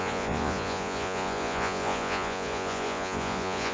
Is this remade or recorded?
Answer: remade